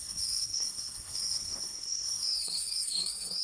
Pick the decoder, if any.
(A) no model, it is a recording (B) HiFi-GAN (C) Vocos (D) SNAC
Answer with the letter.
D